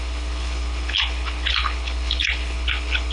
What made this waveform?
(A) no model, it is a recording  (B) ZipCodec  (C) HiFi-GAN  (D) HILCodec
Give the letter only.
D